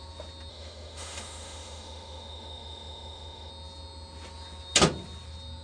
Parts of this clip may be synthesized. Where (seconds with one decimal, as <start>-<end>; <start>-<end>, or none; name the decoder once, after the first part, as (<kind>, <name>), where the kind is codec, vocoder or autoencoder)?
0.5-3.5 (autoencoder, DAC-VAE)